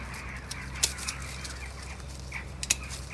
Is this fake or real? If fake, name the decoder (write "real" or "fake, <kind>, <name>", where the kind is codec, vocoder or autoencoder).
real